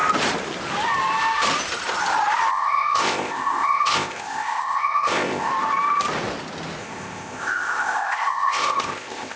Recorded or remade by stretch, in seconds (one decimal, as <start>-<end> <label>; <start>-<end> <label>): 0.0-2.5 recorded; 2.5-5.5 remade; 5.5-6.8 recorded; 6.8-9.4 remade